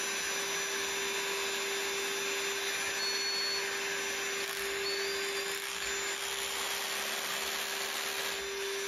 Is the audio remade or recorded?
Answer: recorded